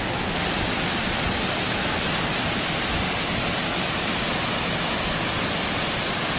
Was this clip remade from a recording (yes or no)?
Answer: no